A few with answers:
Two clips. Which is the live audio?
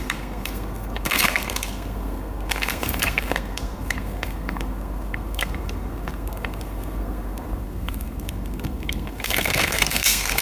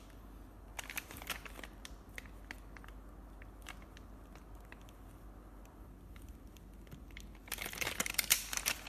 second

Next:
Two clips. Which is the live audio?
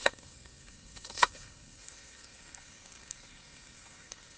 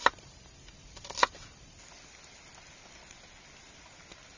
second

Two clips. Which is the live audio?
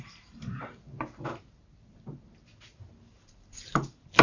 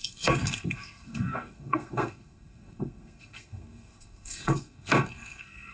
first